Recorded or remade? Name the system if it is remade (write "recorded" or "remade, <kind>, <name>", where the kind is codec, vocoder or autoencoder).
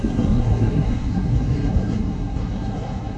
remade, codec, SNAC